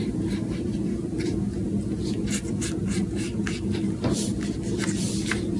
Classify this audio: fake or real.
real